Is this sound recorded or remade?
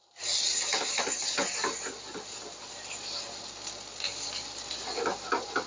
recorded